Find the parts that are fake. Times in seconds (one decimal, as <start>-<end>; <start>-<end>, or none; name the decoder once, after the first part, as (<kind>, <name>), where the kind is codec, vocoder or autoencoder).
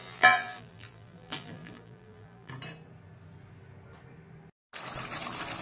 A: 0.0-2.5 (vocoder, BigVGAN v2)